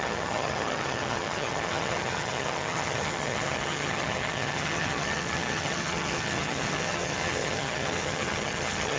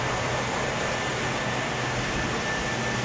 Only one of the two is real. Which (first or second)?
second